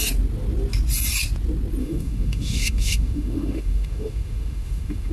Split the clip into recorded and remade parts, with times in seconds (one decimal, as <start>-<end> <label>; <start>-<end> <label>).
0.0-1.8 recorded; 1.8-5.1 remade

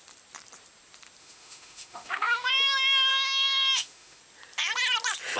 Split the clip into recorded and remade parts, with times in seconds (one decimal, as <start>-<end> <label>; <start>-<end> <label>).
0.0-1.2 recorded; 1.2-2.5 remade; 2.5-3.1 recorded; 3.1-4.2 remade; 4.2-5.4 recorded

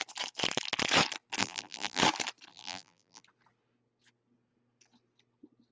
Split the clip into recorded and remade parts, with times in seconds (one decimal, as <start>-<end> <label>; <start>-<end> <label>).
0.0-1.4 recorded; 1.4-2.0 remade; 2.0-2.5 recorded; 2.5-3.2 remade; 3.2-5.7 recorded

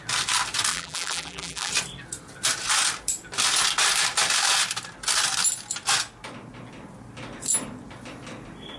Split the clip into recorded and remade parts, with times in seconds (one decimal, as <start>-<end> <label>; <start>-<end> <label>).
0.0-0.7 recorded; 0.7-1.7 remade; 1.7-8.8 recorded

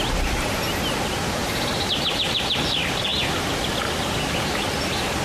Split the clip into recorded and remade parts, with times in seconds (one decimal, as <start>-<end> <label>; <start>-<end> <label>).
0.0-5.2 recorded

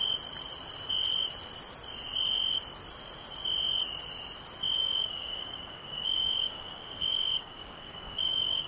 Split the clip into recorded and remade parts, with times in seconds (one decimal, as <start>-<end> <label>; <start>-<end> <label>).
0.0-4.8 recorded; 4.8-8.7 remade

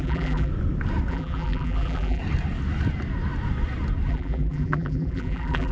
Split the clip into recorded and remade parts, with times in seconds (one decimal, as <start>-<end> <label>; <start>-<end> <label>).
0.0-0.5 remade; 0.5-1.1 recorded; 1.1-2.2 remade; 2.2-4.1 recorded; 4.1-5.7 remade